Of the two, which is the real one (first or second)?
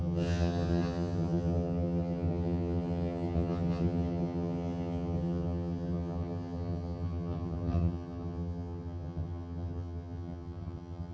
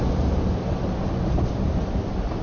second